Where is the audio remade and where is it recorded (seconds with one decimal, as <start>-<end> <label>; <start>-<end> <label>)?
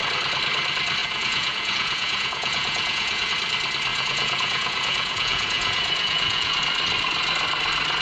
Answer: 0.0-1.0 recorded; 1.0-3.3 remade; 3.3-3.9 recorded; 3.9-6.6 remade; 6.6-8.0 recorded